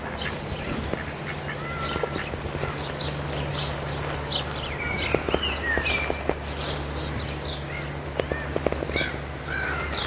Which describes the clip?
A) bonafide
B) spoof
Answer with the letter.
A